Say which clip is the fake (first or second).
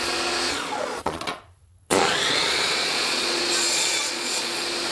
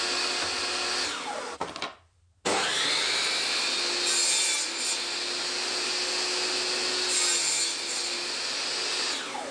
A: first